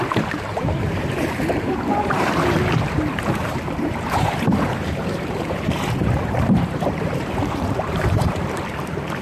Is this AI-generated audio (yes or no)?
yes